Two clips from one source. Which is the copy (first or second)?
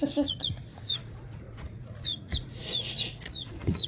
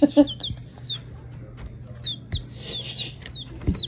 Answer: first